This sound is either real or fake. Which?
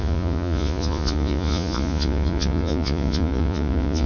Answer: fake